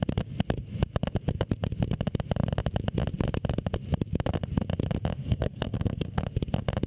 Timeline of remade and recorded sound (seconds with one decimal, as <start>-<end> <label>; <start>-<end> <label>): 0.0-5.2 recorded; 5.2-6.2 remade; 6.2-6.9 recorded